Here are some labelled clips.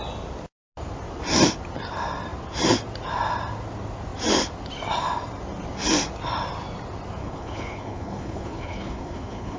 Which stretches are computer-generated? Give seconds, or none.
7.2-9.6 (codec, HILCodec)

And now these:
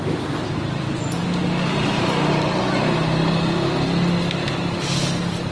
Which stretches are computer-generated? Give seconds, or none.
none

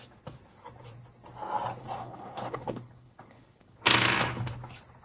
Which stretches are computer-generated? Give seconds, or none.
1.8-3.8 (codec, HILCodec)

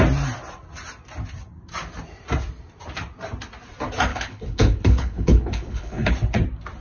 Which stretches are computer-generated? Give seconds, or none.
4.1-6.1 (codec, HILCodec)

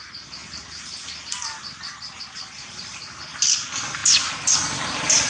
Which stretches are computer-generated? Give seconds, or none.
none

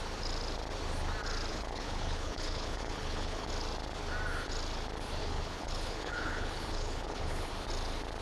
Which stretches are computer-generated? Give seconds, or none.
1.5-3.5 (codec, HILCodec); 5.2-7.5